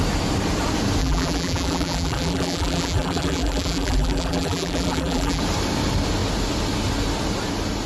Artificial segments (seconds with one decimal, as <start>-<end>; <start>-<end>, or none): 1.0-5.4